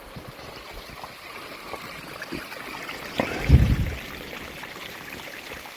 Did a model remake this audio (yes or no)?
yes